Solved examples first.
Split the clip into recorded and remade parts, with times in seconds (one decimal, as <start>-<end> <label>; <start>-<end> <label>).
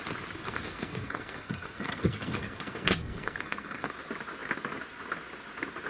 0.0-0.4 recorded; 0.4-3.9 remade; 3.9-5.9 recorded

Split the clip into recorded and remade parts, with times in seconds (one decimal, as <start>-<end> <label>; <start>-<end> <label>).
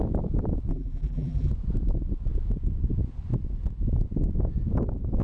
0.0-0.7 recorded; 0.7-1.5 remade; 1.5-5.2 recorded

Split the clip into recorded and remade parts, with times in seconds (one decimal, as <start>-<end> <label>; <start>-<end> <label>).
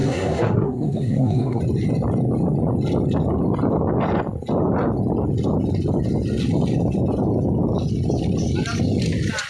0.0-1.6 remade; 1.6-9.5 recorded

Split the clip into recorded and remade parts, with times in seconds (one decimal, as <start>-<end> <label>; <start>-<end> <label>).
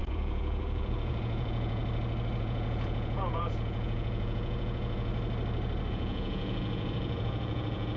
0.0-1.8 remade; 1.8-2.4 recorded; 2.4-5.1 remade; 5.1-5.9 recorded; 5.9-8.0 remade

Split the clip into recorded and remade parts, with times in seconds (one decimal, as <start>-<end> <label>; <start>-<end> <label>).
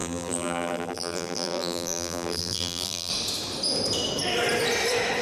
0.0-3.1 remade; 3.1-5.2 recorded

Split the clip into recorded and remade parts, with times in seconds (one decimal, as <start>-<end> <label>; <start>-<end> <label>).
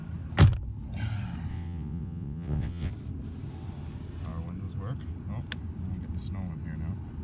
0.0-1.5 recorded; 1.5-2.9 remade; 2.9-7.2 recorded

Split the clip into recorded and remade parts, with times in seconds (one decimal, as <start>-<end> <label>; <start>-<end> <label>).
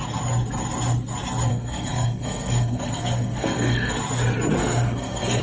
0.0-1.5 recorded; 1.5-3.9 remade; 3.9-4.6 recorded; 4.6-5.4 remade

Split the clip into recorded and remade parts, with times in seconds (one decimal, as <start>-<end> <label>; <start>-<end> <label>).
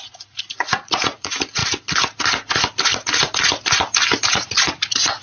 0.0-1.6 remade; 1.6-4.3 recorded; 4.3-5.2 remade